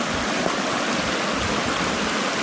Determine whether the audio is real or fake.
real